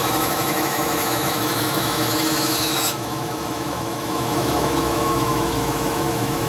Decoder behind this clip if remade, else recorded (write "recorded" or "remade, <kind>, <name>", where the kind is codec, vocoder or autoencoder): remade, autoencoder, DAC-VAE